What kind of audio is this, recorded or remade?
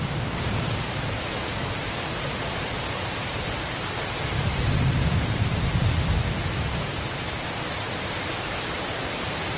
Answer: remade